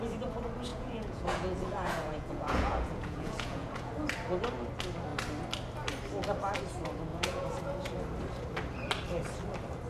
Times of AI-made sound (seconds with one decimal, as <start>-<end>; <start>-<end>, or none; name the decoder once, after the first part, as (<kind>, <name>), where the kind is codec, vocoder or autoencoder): 0.7-3.9 (vocoder, Vocos); 7.1-7.6